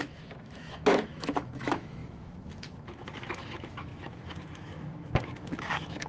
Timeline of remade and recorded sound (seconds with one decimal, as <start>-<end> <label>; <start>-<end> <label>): 0.0-6.1 remade